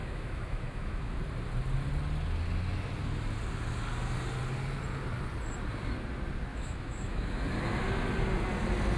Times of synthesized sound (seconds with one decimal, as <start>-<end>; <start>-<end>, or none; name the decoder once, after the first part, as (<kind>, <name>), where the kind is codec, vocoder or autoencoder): 0.0-1.2 (autoencoder, DAC-VAE); 6.5-7.4